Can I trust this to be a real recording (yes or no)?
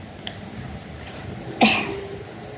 yes